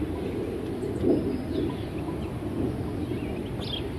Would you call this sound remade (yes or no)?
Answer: no